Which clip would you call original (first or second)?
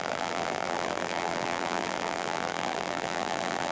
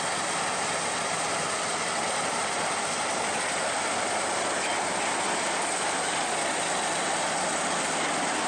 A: second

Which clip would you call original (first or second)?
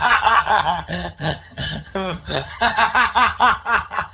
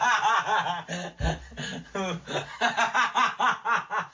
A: second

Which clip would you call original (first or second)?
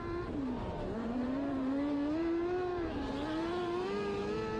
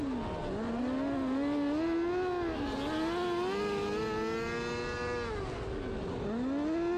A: second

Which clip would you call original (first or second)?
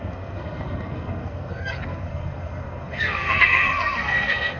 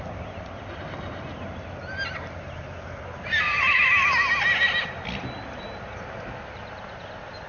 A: second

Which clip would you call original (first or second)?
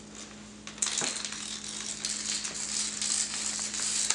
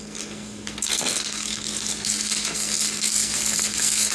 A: first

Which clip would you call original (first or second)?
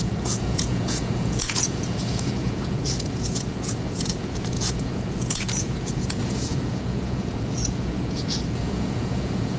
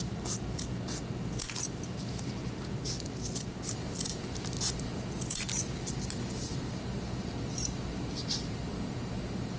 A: second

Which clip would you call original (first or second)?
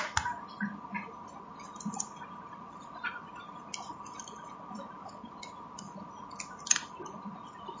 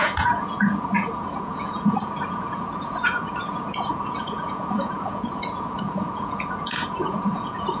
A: first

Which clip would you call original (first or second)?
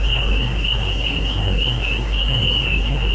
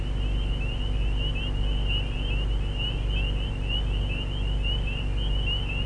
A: second